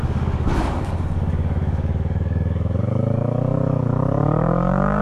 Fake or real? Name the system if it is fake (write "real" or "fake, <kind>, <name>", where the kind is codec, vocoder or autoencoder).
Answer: fake, codec, DAC